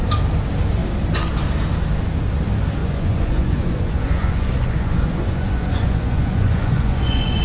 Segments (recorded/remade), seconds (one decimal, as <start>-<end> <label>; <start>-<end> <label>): 0.0-2.8 recorded; 2.8-7.4 remade

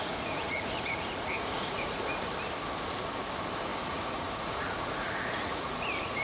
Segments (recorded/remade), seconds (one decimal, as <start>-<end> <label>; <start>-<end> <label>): 0.0-2.0 remade; 2.0-3.7 recorded; 3.7-6.2 remade

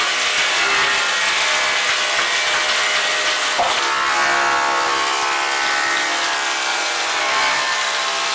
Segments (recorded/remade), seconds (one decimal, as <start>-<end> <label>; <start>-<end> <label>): 0.0-6.7 recorded; 6.7-7.2 remade; 7.2-8.3 recorded